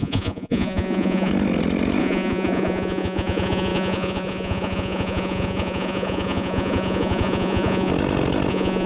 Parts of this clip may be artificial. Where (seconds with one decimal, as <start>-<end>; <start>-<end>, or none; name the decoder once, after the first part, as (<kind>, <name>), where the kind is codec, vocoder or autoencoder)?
0.0-1.3 (vocoder, Vocos); 2.0-7.9; 8.5-8.9